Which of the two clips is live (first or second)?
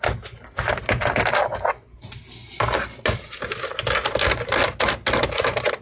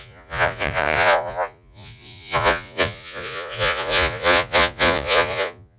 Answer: first